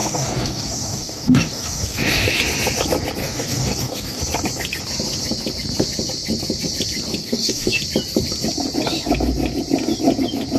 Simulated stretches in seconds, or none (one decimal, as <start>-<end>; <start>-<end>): 0.0-2.4; 3.2-4.2; 7.2-7.8